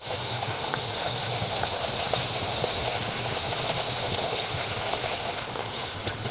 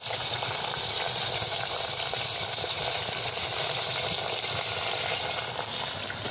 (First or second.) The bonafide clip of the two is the second